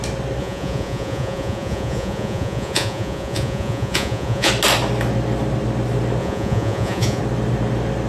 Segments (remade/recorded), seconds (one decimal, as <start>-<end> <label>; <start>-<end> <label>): 0.0-0.4 recorded; 0.4-4.5 remade; 4.5-6.2 recorded; 6.2-7.2 remade; 7.2-8.1 recorded